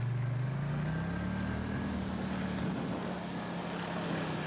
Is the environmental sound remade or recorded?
recorded